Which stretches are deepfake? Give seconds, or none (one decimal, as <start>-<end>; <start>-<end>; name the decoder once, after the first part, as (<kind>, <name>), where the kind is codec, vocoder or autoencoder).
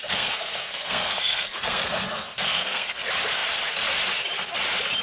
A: 0.0-3.0 (codec, SNAC)